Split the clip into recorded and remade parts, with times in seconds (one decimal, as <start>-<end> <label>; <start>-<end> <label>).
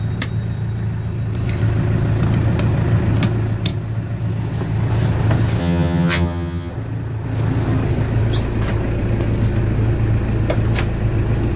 0.0-5.6 recorded; 5.6-6.7 remade; 6.7-11.6 recorded